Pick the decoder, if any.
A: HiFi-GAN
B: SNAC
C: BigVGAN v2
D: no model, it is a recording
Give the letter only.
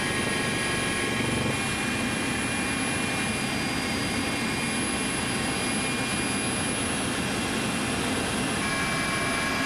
D